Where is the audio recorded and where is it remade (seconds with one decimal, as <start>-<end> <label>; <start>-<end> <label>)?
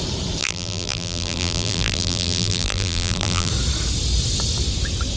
0.0-0.4 recorded; 0.4-3.5 remade; 3.5-5.2 recorded